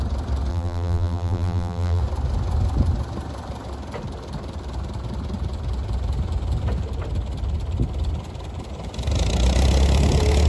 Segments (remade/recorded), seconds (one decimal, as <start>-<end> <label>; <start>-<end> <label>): 0.0-0.5 recorded; 0.5-2.0 remade; 2.0-10.5 recorded